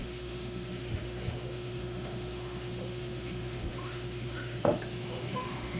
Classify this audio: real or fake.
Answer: fake